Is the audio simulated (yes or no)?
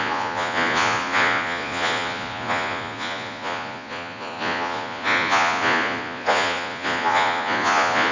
yes